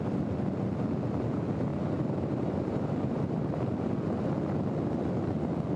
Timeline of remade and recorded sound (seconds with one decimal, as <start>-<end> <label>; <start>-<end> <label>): 0.0-1.7 recorded; 1.7-3.9 remade; 3.9-5.8 recorded